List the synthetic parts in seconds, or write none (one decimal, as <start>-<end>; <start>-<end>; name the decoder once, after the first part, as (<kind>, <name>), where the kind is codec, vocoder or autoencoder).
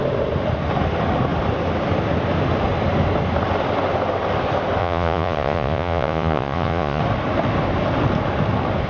4.8-7.0 (vocoder, Vocos)